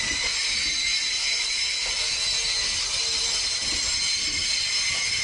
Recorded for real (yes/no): yes